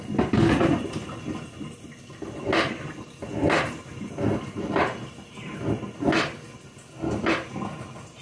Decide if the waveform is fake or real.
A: real